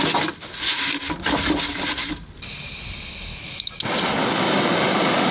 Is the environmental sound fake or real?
real